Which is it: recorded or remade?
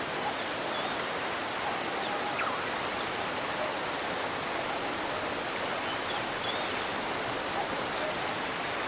recorded